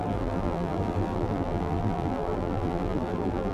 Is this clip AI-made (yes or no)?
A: yes